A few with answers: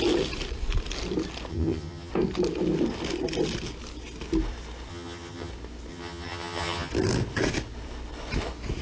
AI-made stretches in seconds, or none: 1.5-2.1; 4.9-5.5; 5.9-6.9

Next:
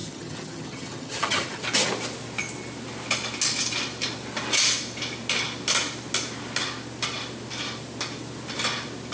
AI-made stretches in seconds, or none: 0.0-1.6

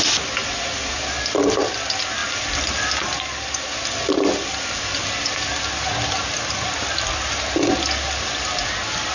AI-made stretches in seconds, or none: none

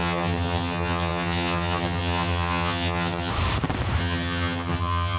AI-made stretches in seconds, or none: 0.0-3.3; 4.0-5.2

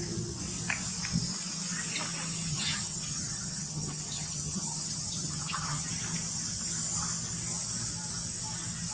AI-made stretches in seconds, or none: 2.5-5.9

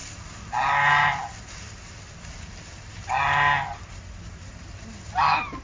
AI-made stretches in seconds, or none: none